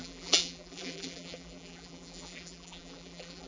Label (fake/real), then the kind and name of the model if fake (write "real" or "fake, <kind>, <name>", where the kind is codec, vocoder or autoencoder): fake, vocoder, BigVGAN v2